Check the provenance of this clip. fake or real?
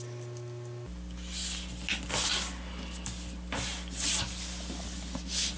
real